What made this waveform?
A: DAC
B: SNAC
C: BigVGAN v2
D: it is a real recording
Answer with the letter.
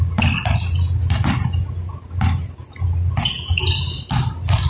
D